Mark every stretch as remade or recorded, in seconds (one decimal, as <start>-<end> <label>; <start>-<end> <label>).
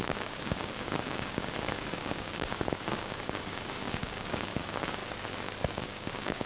0.0-5.0 remade; 5.0-5.7 recorded; 5.7-6.5 remade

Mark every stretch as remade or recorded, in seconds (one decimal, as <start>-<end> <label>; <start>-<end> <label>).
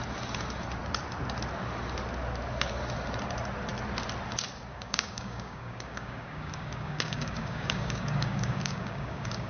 0.0-4.7 recorded; 4.7-9.5 remade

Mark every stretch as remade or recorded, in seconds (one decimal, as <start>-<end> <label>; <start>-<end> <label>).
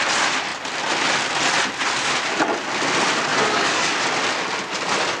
0.0-3.3 recorded; 3.3-3.9 remade; 3.9-5.2 recorded